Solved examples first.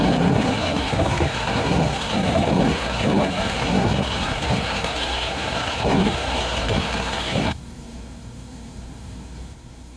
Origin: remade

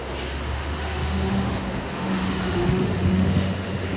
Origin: remade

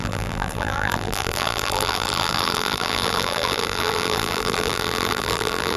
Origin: remade